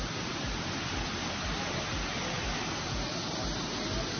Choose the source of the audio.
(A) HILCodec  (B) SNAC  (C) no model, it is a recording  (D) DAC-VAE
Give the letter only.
C